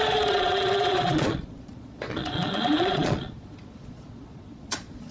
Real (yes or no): no